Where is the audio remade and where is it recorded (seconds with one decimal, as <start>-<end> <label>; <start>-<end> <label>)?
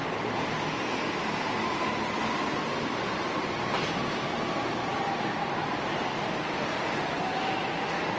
0.0-8.2 recorded